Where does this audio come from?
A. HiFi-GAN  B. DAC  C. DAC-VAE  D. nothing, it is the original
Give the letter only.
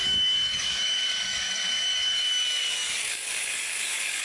B